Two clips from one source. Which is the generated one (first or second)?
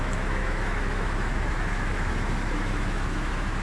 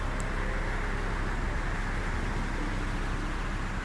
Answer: first